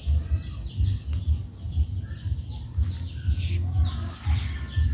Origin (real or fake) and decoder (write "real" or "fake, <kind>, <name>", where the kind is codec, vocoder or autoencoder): real